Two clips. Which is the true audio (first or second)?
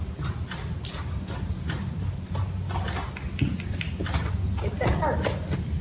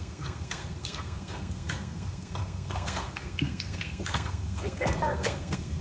first